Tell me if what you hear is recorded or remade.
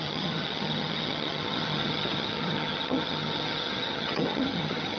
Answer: remade